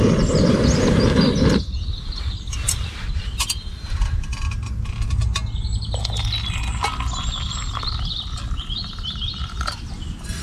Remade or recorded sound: recorded